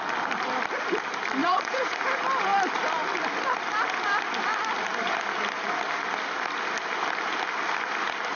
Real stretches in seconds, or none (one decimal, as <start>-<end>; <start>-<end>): 0.0-1.4; 2.0-8.4